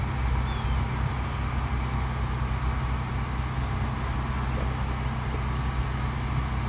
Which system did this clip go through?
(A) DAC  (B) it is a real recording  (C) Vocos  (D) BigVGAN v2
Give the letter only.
B